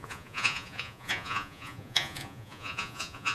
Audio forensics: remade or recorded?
remade